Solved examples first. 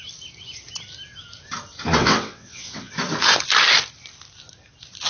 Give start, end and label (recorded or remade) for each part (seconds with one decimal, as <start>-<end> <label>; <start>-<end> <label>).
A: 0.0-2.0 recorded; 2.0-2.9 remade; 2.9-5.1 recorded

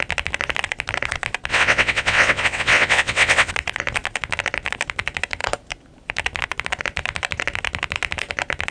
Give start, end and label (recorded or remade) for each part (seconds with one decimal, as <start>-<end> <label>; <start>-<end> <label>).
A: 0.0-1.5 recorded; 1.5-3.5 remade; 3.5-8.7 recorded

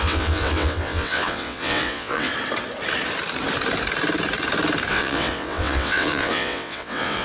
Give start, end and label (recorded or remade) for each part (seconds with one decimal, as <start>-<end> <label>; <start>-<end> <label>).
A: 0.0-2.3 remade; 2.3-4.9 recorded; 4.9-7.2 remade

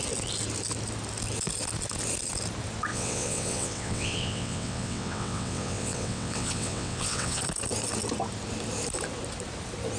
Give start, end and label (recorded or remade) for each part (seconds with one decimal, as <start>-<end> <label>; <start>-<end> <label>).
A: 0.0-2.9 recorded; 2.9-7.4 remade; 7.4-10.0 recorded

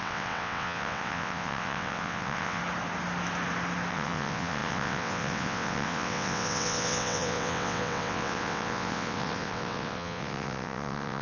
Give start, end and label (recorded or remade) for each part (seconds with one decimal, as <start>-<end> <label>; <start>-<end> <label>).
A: 0.0-2.6 remade; 2.6-3.9 recorded; 3.9-11.2 remade